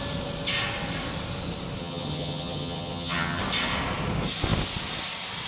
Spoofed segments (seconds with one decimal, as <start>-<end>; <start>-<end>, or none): 1.8-3.4